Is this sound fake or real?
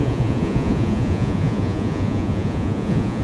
fake